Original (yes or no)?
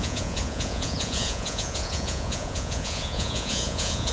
no